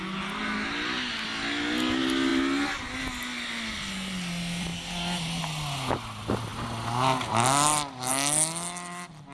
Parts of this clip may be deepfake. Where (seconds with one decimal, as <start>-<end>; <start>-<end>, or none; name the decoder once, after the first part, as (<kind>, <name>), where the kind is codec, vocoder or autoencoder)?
none